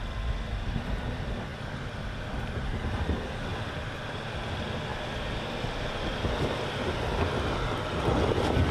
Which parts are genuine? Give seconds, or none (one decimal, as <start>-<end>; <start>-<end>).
0.0-3.5; 4.2-8.7